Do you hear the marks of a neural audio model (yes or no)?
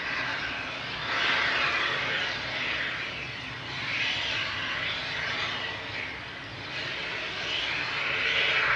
no